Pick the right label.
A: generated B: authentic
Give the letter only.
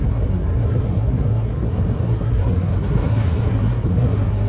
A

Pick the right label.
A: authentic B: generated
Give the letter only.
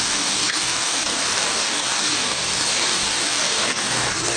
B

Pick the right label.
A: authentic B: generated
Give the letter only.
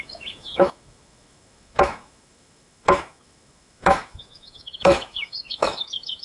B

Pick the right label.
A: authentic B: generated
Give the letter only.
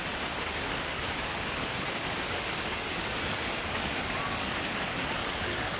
B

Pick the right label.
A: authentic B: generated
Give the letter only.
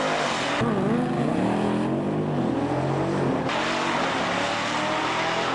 A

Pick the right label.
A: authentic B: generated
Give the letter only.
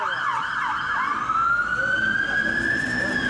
A